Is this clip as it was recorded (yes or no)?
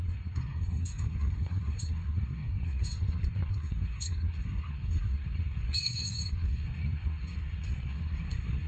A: no